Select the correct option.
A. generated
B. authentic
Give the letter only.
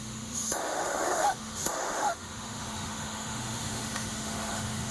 A